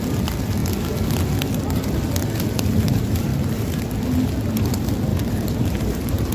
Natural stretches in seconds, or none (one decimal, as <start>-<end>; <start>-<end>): 0.0-5.1